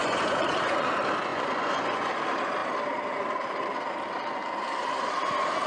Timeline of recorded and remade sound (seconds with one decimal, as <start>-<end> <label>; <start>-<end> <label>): 0.0-0.9 remade; 0.9-1.3 recorded; 1.3-2.1 remade; 2.1-5.7 recorded